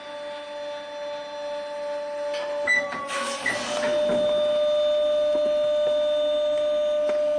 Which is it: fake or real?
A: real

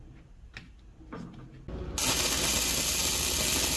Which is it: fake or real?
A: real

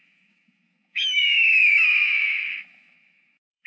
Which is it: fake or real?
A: fake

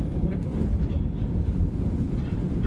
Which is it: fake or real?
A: real